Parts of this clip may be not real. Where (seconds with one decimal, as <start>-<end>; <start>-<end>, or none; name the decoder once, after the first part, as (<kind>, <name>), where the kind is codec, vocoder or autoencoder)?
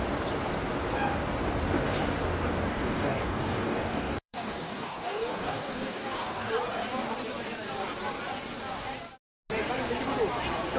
2.7-6.5 (codec, DAC)